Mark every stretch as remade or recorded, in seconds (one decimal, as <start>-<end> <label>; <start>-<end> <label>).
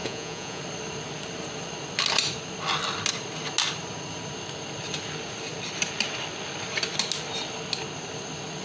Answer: 0.0-0.6 remade; 0.6-8.6 recorded